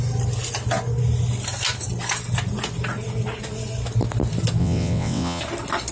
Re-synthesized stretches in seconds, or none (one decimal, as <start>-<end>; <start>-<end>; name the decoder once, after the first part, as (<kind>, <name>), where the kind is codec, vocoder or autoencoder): 4.6-5.4 (vocoder, WaveNeXt)